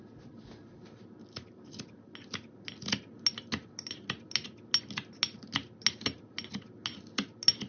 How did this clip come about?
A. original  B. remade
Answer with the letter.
A